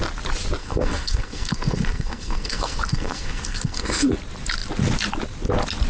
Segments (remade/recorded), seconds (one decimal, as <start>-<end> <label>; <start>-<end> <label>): 0.0-0.6 recorded; 0.6-4.1 remade; 4.1-5.9 recorded